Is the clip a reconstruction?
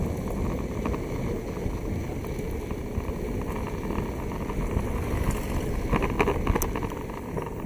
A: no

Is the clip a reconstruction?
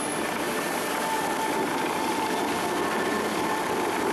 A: no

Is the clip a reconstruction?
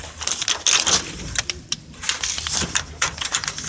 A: yes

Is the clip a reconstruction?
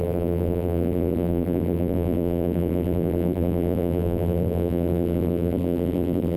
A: yes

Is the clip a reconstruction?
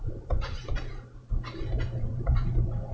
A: yes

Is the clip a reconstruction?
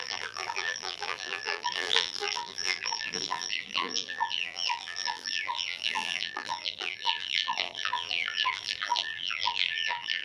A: yes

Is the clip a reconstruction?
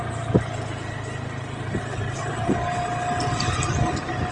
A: no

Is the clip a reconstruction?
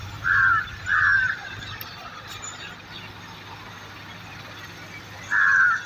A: no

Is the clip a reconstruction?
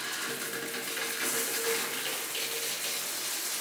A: no